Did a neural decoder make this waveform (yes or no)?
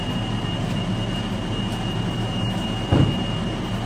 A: no